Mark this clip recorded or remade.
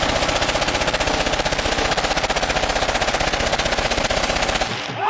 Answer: recorded